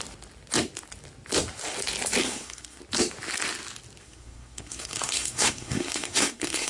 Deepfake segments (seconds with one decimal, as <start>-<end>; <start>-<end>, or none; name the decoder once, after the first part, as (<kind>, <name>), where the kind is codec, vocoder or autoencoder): 2.2-2.8 (codec, SNAC); 4.0-6.7